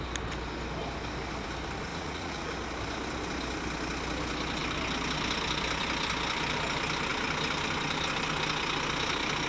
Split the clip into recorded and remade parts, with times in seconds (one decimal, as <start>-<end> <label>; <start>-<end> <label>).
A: 0.0-1.9 recorded; 1.9-2.5 remade; 2.5-9.5 recorded